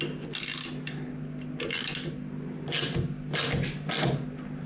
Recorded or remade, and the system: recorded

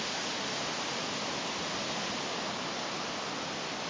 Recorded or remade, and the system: recorded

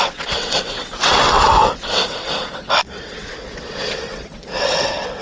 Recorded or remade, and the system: remade, vocoder, WaveNeXt